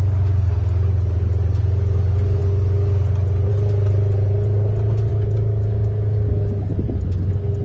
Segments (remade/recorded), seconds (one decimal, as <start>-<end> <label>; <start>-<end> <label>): 0.0-5.1 recorded; 5.1-6.7 remade; 6.7-7.6 recorded